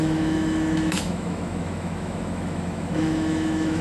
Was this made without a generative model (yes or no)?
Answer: no